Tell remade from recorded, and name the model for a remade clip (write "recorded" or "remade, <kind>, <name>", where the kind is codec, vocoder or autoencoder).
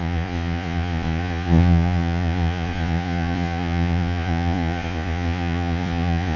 remade, vocoder, Vocos